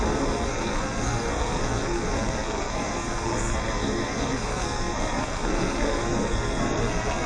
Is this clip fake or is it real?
fake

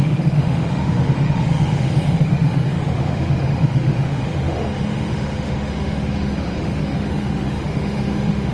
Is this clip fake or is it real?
fake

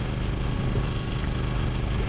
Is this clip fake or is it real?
real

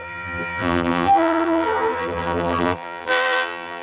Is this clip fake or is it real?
fake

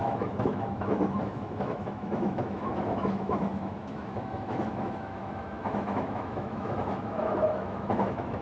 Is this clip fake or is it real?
fake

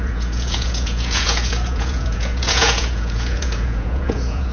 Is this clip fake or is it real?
fake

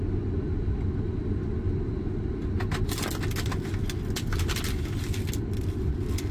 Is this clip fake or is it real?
real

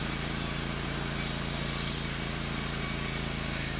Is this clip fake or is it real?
real